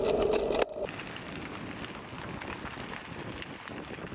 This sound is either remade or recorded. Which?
recorded